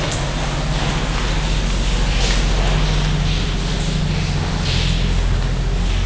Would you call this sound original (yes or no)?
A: yes